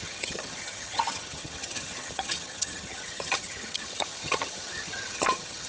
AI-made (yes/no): yes